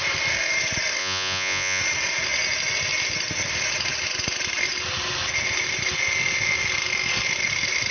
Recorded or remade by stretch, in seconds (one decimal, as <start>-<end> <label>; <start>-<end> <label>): 0.0-1.0 recorded; 1.0-1.8 remade; 1.8-7.9 recorded